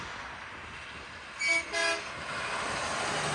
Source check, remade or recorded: recorded